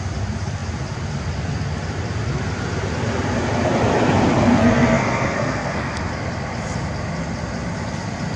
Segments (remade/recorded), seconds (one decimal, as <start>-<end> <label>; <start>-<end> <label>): 0.0-4.5 recorded; 4.5-6.1 remade; 6.1-8.4 recorded